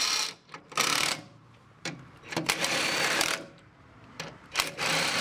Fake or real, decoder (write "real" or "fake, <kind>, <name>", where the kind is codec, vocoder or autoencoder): fake, vocoder, BigVGAN v2